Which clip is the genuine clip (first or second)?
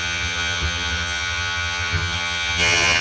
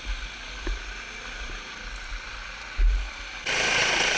second